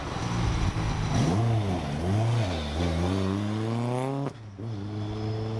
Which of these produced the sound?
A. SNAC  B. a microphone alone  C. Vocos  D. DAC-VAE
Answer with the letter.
B